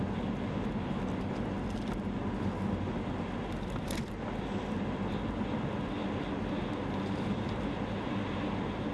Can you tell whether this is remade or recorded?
recorded